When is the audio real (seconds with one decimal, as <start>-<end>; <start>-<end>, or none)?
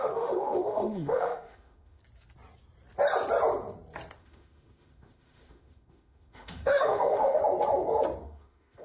2.0-4.2; 7.4-8.2